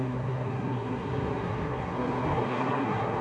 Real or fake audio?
fake